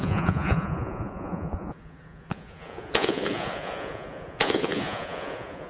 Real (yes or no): no